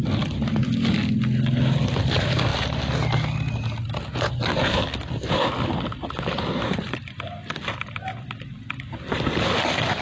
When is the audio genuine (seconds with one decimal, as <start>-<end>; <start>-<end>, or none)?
0.0-10.0